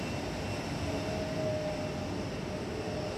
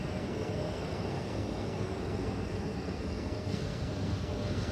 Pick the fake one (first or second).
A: second